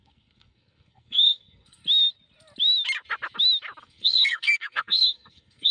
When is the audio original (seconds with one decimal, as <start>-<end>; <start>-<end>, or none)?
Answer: 1.8-3.8